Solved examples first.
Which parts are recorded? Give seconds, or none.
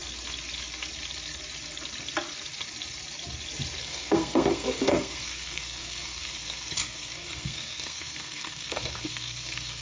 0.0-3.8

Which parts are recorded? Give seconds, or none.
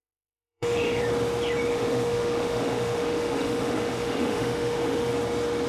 1.0-1.7; 5.1-5.7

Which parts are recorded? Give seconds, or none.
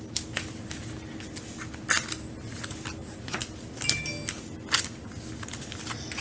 0.0-6.2